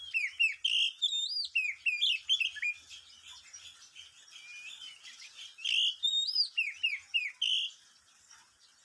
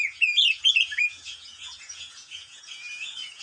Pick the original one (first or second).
first